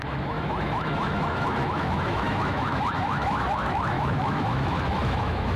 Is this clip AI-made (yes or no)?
yes